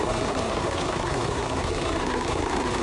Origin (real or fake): fake